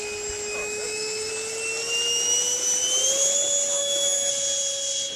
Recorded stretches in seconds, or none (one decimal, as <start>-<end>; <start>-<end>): 0.0-0.6; 1.3-3.8; 4.3-5.2